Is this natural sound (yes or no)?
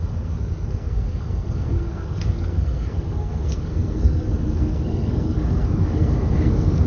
no